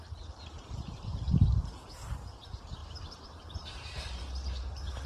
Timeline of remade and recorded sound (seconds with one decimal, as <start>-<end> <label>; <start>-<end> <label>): 0.0-2.8 recorded; 2.8-4.2 remade; 4.2-5.1 recorded